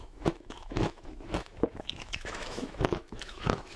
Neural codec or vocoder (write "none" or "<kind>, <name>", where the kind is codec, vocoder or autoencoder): autoencoder, DAC-VAE